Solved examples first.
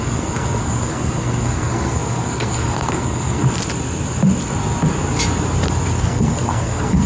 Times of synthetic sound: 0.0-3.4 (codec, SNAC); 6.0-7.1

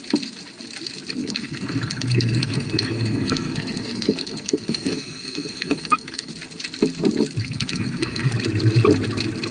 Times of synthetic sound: 1.2-6.3 (codec, SNAC); 7.4-8.3

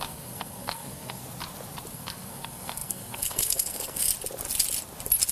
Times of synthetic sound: 0.0-1.2 (codec, SNAC); 1.9-4.1

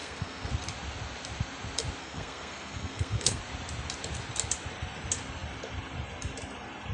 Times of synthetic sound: 0.0-0.5 (codec, SNAC); 2.0-3.4